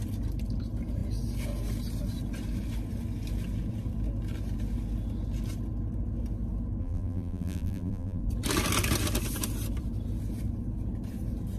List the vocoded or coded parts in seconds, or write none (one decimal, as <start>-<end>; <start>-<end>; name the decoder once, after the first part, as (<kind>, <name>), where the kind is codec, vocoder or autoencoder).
6.8-8.2 (vocoder, BigVGAN v2)

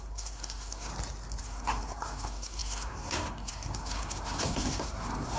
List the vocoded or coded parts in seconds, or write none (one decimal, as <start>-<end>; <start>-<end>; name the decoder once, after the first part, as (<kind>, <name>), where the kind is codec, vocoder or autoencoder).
0.0-0.9 (codec, SNAC); 1.4-5.4

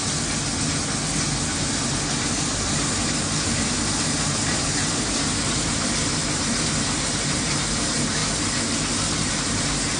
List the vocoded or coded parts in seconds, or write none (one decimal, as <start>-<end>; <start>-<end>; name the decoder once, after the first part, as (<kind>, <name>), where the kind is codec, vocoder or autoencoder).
2.2-8.2 (vocoder, BigVGAN v2); 9.3-10.0